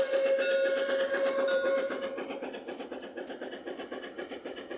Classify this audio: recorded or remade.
recorded